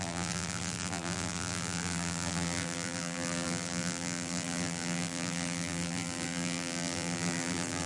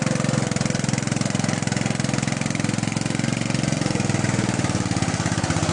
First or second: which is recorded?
second